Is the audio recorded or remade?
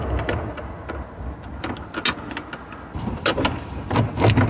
recorded